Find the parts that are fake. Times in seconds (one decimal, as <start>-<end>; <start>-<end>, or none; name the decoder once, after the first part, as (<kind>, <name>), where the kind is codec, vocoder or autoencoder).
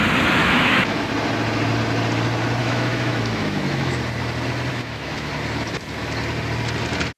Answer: 0.4-1.1 (autoencoder, DAC-VAE); 2.6-4.0; 4.7-5.3